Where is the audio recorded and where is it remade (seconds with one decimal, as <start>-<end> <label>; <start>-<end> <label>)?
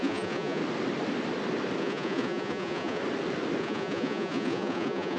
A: 0.0-0.6 remade; 0.6-1.8 recorded; 1.8-3.0 remade; 3.0-3.6 recorded; 3.6-5.2 remade